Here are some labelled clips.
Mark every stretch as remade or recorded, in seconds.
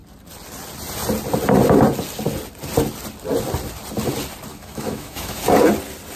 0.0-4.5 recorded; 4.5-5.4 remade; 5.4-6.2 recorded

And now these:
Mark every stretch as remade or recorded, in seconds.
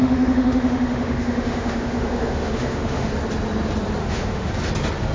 0.0-3.1 remade; 3.1-4.0 recorded; 4.0-4.5 remade; 4.5-5.1 recorded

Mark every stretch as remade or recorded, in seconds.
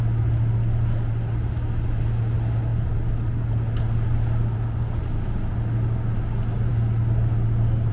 0.0-7.9 recorded